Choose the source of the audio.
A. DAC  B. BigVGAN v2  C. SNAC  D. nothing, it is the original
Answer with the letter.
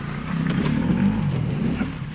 B